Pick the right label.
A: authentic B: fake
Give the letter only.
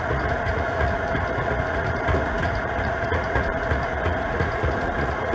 B